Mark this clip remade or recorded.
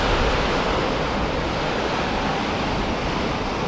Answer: recorded